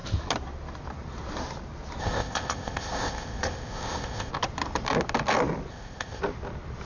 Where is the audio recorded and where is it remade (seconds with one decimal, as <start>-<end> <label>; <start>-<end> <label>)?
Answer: 0.0-2.0 recorded; 2.0-4.3 remade; 4.3-5.7 recorded; 5.7-6.2 remade; 6.2-6.9 recorded